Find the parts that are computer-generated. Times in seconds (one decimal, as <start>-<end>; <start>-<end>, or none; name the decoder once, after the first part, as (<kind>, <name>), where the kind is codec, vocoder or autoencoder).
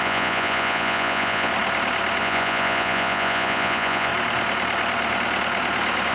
0.0-1.5 (vocoder, Vocos); 2.2-4.1